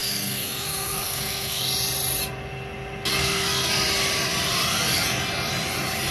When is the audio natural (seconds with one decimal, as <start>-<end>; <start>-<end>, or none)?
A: 1.6-3.1; 3.7-6.1